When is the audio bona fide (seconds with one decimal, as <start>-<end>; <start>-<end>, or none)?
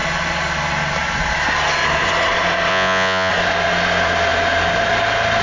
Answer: 0.0-2.7; 3.3-5.4